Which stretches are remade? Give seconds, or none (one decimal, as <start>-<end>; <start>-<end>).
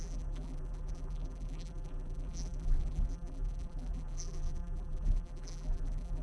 0.0-6.2